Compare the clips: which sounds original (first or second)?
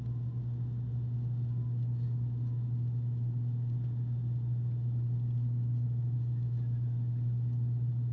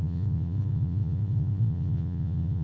first